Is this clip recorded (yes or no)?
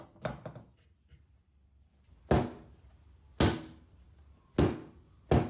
yes